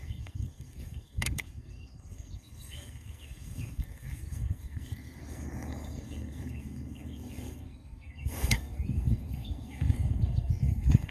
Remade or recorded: remade